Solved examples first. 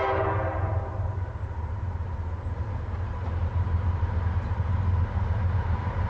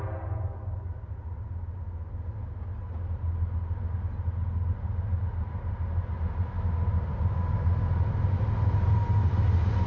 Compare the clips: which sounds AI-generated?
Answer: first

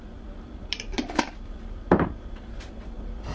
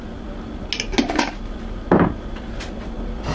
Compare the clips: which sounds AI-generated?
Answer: first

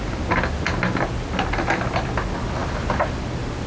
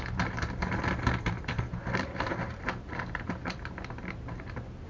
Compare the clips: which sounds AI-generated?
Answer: second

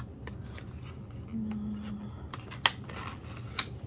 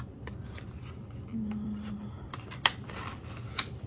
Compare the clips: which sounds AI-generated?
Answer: second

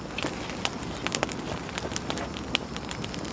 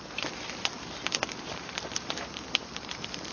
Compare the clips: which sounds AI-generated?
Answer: second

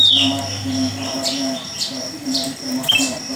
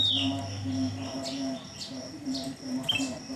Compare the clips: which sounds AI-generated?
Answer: first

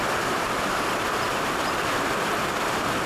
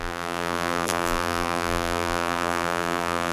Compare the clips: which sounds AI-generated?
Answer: second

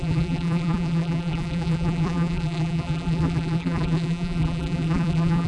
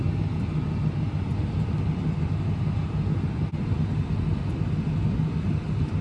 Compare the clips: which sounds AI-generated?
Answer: first